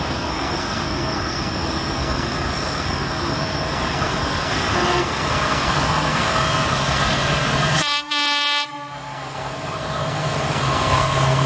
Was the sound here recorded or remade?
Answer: remade